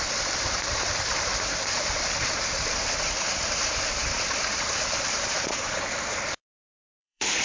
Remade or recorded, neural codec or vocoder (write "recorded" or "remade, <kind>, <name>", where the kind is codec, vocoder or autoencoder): remade, vocoder, BigVGAN v2